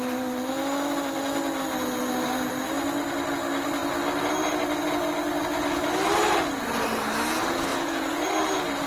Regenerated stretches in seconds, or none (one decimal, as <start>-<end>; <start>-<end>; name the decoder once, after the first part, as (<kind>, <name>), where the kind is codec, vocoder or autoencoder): 7.7-8.2 (vocoder, Vocos)